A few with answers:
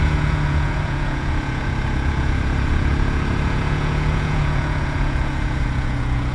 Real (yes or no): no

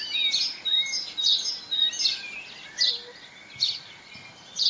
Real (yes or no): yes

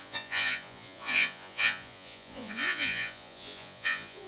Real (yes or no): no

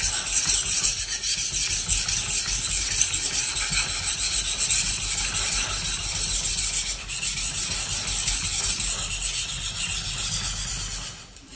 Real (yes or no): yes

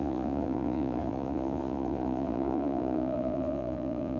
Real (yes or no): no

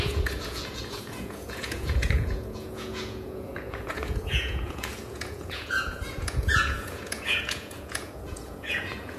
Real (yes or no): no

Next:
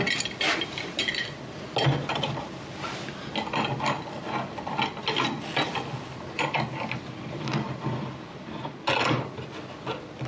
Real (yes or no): yes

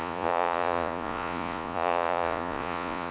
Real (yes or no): no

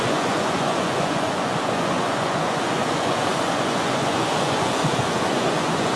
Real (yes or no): no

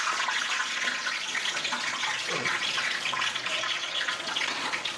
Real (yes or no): no